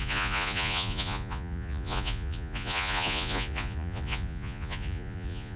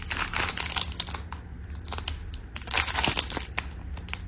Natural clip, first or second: second